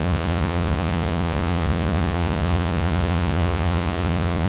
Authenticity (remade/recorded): remade